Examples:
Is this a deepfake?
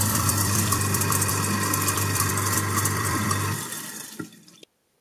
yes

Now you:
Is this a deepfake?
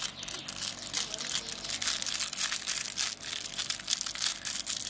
no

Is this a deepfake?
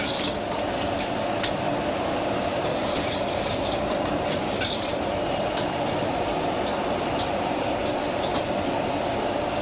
yes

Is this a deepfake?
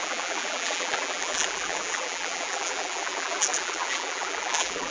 yes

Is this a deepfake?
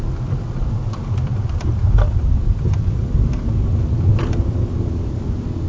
yes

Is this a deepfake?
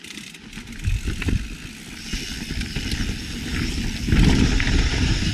no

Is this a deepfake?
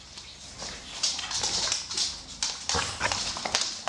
no